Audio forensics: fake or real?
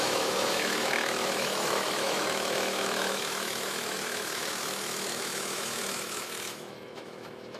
fake